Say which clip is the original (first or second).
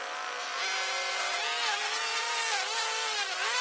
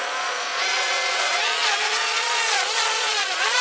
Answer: first